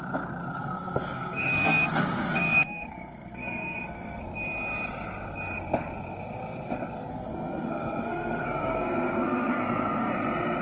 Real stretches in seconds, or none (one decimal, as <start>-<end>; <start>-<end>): 0.0-0.6; 4.2-7.1; 10.1-10.6